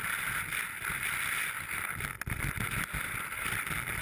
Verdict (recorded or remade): recorded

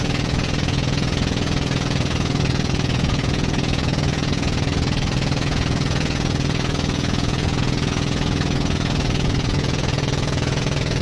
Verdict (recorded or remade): remade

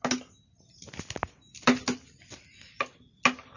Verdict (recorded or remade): recorded